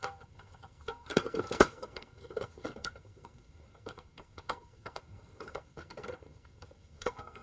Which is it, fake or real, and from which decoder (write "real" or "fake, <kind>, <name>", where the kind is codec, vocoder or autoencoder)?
fake, codec, SNAC